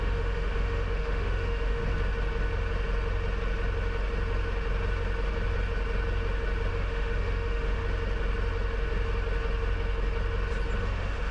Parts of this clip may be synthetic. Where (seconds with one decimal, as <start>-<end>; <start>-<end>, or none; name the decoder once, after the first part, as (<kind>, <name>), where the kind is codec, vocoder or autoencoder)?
0.0-1.8 (autoencoder, DAC-VAE); 6.7-7.8; 10.8-11.3